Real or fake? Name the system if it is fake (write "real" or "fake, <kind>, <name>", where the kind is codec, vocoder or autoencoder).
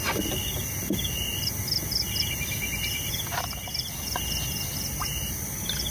real